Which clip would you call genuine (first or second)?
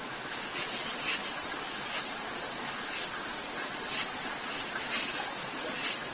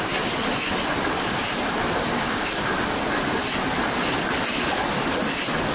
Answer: second